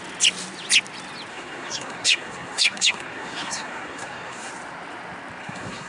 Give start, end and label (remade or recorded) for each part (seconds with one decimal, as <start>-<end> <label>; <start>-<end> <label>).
0.0-1.3 recorded; 1.3-4.5 remade; 4.5-5.4 recorded; 5.4-5.9 remade